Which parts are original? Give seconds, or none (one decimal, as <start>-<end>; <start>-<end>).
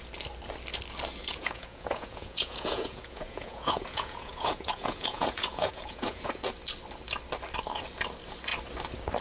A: 0.0-1.2; 6.4-9.2